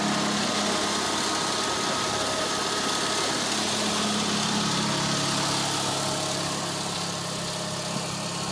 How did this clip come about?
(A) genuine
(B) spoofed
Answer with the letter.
A